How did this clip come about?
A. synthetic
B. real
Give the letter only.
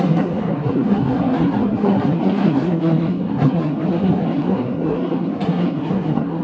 A